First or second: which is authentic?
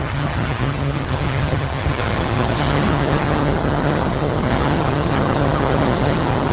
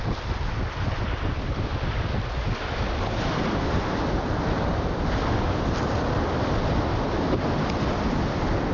second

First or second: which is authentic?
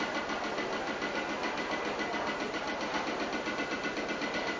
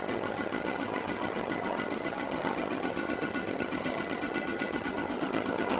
first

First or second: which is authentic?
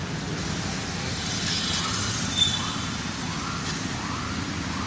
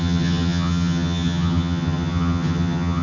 first